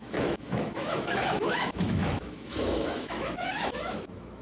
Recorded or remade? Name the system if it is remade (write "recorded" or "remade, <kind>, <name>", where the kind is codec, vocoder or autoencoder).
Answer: remade, autoencoder, DAC-VAE